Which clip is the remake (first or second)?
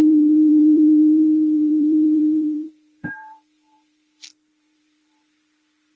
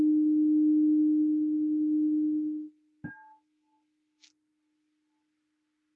first